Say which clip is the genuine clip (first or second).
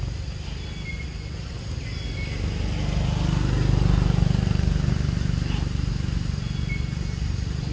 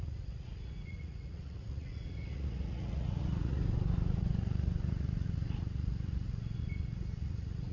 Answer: first